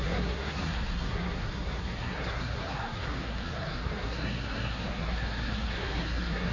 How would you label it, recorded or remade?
remade